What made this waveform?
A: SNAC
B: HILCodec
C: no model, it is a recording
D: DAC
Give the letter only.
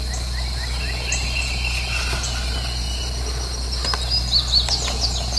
C